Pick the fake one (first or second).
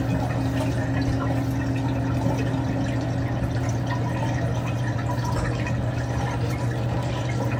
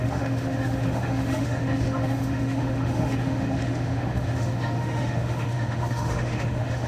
second